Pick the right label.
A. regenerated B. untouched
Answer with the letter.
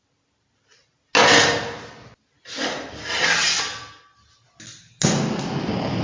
B